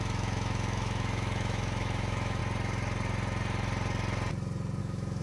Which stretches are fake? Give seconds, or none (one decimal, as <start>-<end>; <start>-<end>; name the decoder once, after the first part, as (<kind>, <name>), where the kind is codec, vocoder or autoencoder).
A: 0.0-2.4 (autoencoder, DAC-VAE); 4.8-5.2